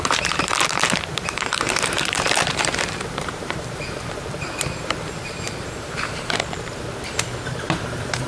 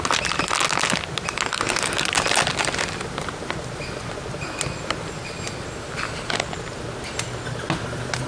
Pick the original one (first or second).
second